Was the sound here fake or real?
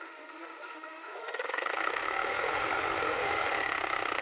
fake